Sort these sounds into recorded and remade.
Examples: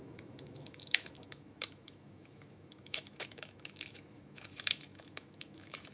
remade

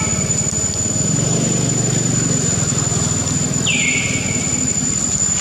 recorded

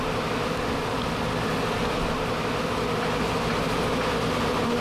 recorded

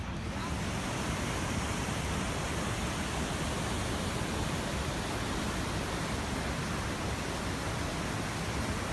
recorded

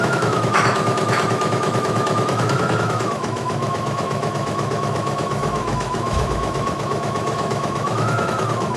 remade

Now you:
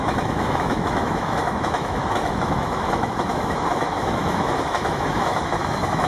remade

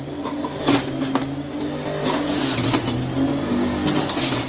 recorded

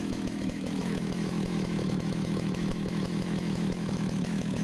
remade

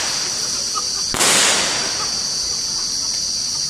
recorded